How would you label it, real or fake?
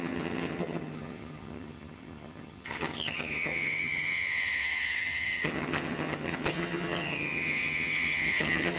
fake